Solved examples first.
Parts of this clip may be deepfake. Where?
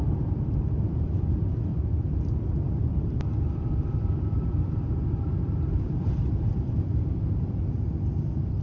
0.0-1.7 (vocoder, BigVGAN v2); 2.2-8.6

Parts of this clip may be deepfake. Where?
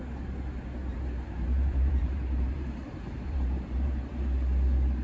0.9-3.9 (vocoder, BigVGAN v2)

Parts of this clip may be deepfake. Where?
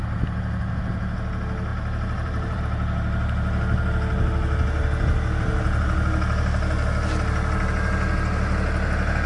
1.7-2.6 (vocoder, BigVGAN v2)